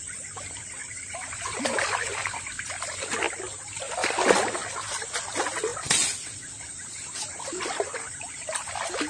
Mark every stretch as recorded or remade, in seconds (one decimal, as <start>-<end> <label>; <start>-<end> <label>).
0.0-9.1 recorded